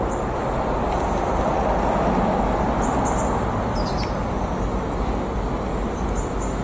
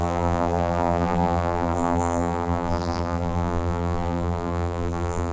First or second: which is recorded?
first